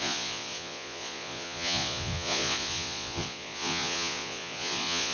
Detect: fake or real fake